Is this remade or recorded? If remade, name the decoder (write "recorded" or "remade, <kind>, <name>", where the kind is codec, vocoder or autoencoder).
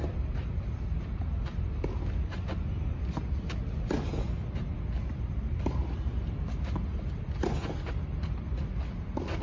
recorded